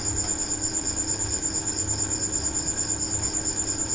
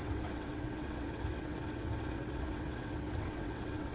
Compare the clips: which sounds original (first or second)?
first